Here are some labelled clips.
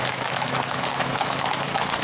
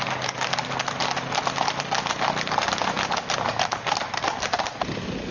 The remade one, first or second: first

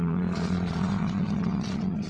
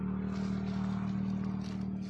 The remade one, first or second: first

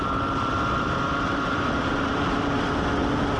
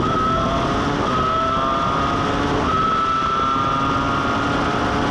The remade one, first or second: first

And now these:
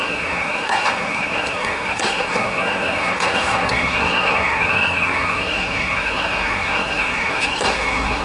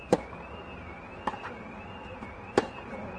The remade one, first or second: first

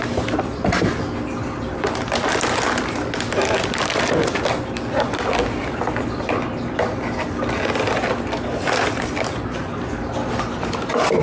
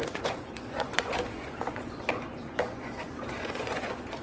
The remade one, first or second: second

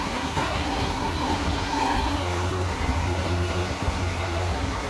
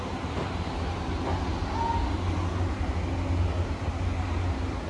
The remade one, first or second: first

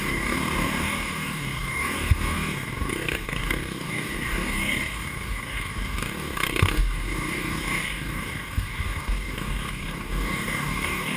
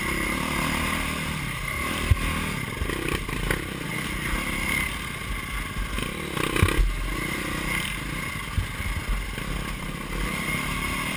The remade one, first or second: first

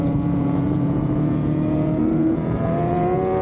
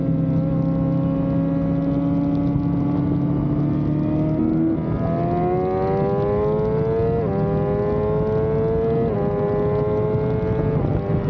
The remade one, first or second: first